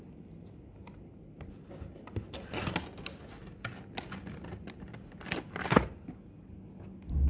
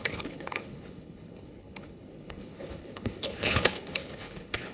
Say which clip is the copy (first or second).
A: second